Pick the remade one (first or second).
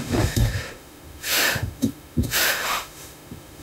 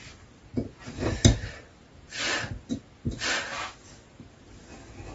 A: first